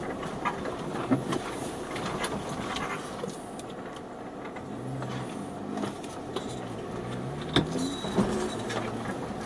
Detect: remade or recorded recorded